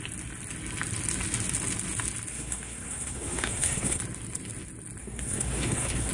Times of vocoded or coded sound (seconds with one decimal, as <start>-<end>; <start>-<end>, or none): 2.3-4.0; 5.0-6.1